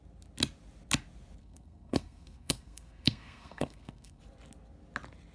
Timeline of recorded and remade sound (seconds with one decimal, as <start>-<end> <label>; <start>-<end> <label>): 0.0-1.4 recorded; 1.4-4.2 remade; 4.2-5.3 recorded